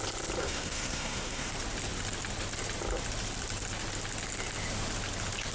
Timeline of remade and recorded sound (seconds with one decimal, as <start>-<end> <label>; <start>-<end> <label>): 0.0-0.4 recorded; 0.4-1.5 remade; 1.5-5.5 recorded